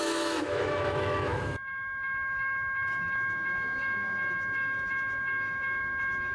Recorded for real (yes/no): no